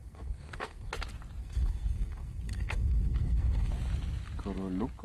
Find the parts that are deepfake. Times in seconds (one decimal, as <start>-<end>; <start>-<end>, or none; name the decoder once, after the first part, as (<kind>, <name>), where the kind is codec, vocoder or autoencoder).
0.0-0.9 (codec, SNAC); 1.4-3.7